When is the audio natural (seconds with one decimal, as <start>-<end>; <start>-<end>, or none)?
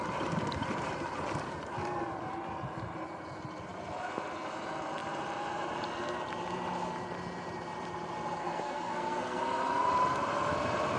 0.0-8.4; 9.4-11.0